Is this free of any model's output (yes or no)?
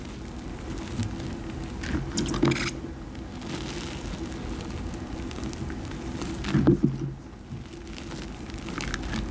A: yes